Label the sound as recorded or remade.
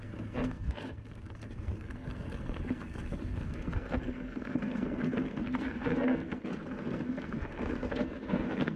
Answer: remade